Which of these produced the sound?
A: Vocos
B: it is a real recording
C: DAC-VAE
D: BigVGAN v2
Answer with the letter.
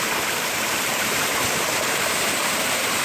D